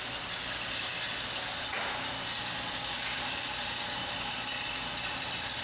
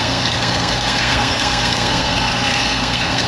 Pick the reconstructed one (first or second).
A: second